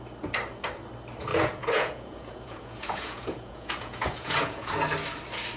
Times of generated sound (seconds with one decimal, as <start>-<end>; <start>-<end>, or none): 1.3-4.7